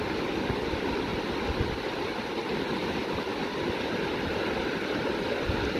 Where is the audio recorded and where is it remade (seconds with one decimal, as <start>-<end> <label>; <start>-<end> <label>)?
0.0-5.8 recorded